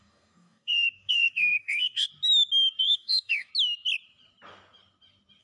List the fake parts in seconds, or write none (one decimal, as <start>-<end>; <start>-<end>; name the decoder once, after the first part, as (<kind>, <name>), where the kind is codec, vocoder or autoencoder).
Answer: 0.0-2.1 (codec, DAC); 2.8-3.5